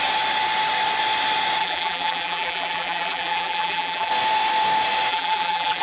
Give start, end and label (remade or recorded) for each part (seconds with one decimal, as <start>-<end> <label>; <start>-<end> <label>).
0.0-1.6 recorded; 1.6-4.1 remade; 4.1-5.1 recorded; 5.1-5.8 remade